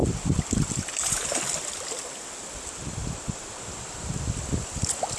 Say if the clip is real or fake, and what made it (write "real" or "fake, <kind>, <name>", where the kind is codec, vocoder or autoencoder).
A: real